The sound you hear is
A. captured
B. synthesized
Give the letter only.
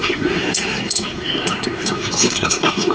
B